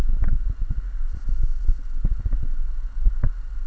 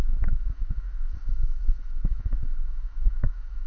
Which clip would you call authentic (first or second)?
first